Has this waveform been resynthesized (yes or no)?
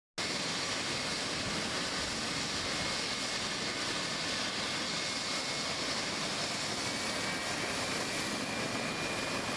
no